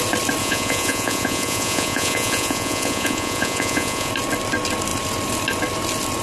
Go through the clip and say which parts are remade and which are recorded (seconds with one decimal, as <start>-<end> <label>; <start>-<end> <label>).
0.0-0.4 recorded; 0.4-4.1 remade; 4.1-6.2 recorded

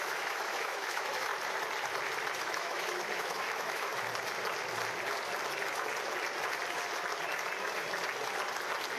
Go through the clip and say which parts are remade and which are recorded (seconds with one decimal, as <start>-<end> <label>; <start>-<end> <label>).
0.0-1.3 remade; 1.3-2.4 recorded; 2.4-3.9 remade; 3.9-9.0 recorded

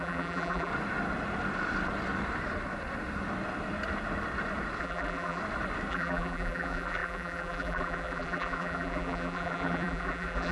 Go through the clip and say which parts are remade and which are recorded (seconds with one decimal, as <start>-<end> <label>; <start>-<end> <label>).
0.0-0.7 remade; 0.7-4.8 recorded; 4.8-5.4 remade; 5.4-5.9 recorded; 5.9-10.5 remade

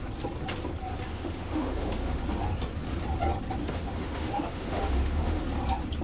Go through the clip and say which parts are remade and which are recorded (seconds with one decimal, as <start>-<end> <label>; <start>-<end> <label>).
0.0-1.1 recorded; 1.1-2.2 remade; 2.2-3.6 recorded; 3.6-5.4 remade; 5.4-6.0 recorded

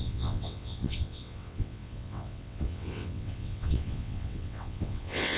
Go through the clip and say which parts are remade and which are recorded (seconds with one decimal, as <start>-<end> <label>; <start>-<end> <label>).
0.0-5.4 remade